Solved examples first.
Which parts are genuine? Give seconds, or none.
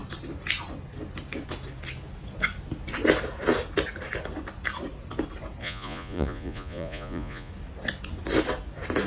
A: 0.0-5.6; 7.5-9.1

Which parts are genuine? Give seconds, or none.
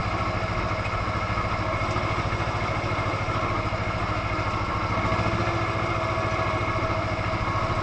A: 0.0-7.8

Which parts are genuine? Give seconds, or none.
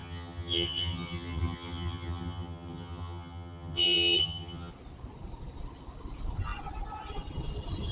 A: 4.7-7.9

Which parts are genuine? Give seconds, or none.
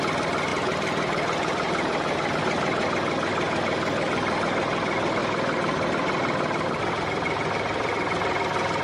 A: 0.0-0.5; 2.4-5.2; 7.9-8.8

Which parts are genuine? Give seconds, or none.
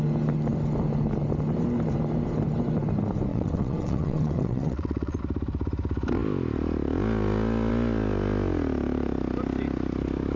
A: 0.0-3.3; 5.2-10.4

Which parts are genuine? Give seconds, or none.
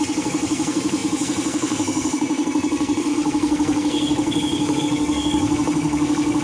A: none